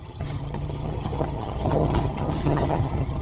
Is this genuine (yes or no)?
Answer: no